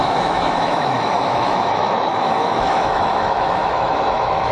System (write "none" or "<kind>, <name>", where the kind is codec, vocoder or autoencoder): autoencoder, DAC-VAE